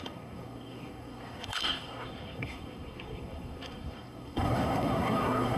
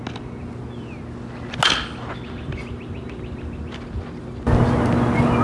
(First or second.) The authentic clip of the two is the second